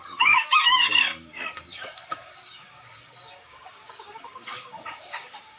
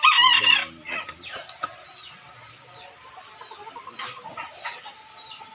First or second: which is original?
second